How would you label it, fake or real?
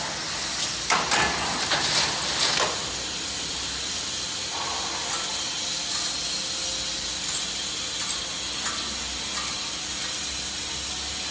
real